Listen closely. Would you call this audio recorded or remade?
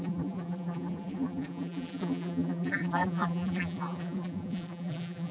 remade